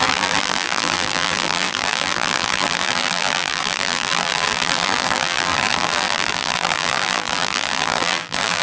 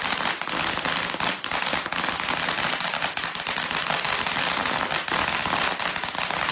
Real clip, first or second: second